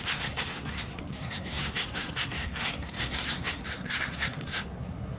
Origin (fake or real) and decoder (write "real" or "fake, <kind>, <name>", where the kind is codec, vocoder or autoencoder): fake, codec, SNAC